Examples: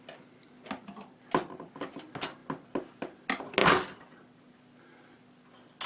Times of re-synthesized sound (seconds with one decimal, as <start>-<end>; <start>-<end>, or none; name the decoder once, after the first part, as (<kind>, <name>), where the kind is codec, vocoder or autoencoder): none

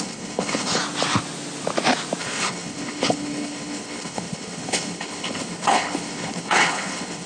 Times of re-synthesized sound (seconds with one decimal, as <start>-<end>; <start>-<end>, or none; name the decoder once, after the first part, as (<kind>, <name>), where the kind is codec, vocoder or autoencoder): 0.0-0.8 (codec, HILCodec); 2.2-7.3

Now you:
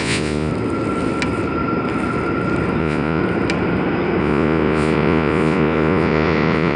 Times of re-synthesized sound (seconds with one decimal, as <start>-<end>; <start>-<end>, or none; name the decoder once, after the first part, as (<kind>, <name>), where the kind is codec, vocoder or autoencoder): 0.0-0.5 (vocoder, Vocos); 2.8-3.2; 4.2-6.8